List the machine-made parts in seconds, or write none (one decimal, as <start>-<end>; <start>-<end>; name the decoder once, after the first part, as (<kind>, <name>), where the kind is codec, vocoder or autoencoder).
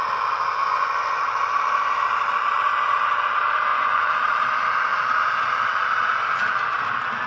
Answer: 0.6-1.2 (vocoder, Vocos); 3.7-4.2